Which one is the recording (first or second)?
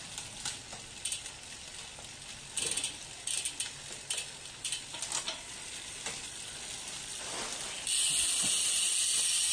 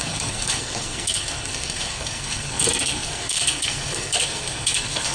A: first